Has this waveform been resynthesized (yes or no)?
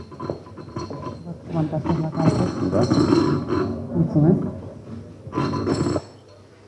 no